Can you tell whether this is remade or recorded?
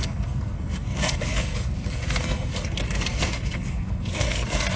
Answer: remade